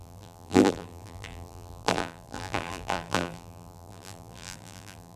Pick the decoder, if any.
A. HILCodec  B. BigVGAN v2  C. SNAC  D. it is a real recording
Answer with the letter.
B